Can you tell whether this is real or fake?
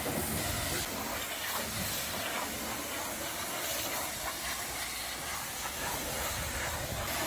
real